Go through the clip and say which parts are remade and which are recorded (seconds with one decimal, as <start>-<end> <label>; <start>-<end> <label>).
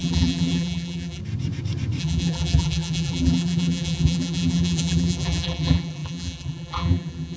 0.0-1.2 remade; 1.2-2.0 recorded; 2.0-7.4 remade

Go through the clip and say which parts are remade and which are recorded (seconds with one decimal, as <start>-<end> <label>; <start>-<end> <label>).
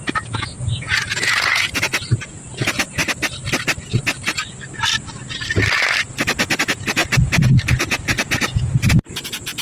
0.0-3.0 remade; 3.0-6.6 recorded; 6.6-9.6 remade